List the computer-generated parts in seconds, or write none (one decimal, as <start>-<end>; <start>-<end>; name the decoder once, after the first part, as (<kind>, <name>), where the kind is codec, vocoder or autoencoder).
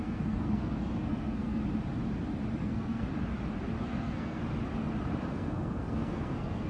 0.0-1.6 (codec, SNAC); 2.6-3.1; 3.8-4.4; 5.3-6.7